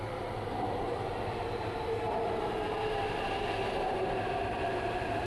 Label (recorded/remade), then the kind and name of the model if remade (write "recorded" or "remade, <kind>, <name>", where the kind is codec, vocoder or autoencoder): remade, vocoder, BigVGAN v2